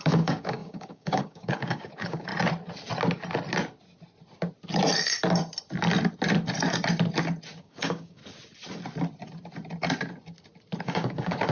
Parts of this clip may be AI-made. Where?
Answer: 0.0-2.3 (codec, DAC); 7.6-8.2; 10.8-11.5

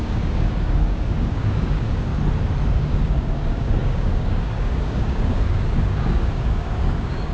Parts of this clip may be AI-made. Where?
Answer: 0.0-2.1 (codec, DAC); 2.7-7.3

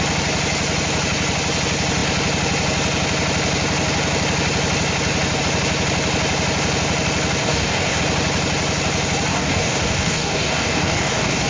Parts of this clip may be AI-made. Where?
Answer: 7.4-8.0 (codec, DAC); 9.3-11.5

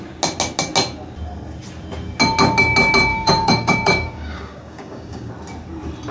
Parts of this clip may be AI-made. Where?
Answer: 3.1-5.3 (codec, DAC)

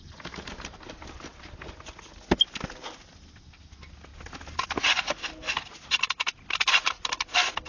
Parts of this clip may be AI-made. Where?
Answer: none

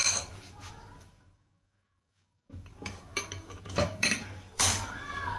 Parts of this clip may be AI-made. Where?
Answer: 0.0-5.4 (codec, DAC)

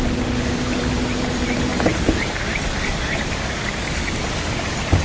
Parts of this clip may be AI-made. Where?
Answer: 1.7-5.0 (codec, DAC)